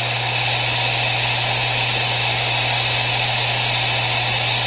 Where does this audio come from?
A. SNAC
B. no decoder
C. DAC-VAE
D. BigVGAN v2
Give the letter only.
B